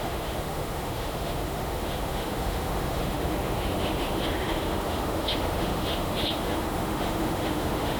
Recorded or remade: remade